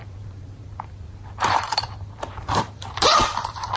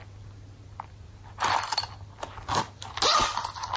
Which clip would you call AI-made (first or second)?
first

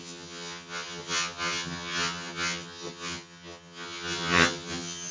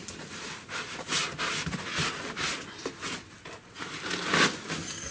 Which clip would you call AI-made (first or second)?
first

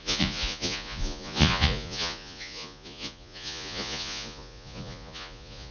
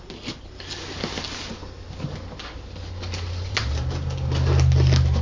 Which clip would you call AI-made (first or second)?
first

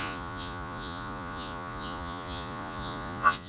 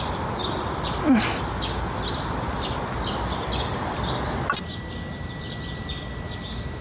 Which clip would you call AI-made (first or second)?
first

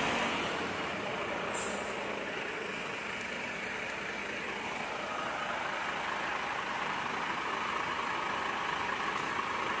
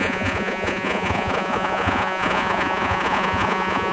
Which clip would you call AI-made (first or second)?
second